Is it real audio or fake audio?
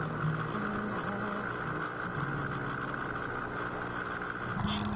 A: real